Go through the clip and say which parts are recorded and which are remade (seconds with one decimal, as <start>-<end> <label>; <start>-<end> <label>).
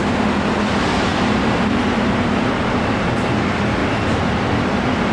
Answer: 0.0-5.1 remade